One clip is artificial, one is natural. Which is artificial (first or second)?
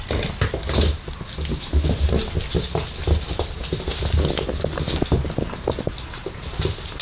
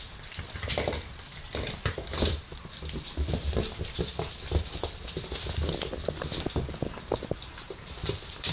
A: second